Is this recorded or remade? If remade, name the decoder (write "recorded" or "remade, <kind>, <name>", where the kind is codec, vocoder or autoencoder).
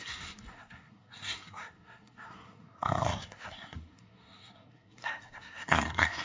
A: remade, codec, SNAC